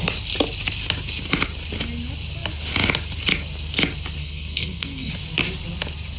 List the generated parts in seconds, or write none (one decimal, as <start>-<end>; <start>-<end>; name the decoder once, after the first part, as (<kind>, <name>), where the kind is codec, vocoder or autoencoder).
4.2-5.1 (codec, SNAC)